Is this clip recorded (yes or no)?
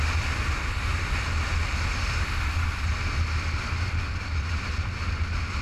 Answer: yes